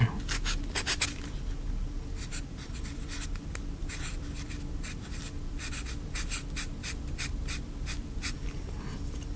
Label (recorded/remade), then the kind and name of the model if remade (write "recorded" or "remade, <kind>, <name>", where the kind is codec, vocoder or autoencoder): recorded